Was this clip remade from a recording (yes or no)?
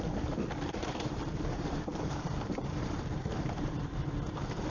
yes